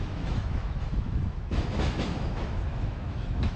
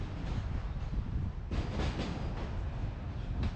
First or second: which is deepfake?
first